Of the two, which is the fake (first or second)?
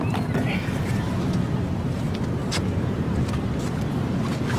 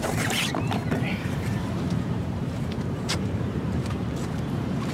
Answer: second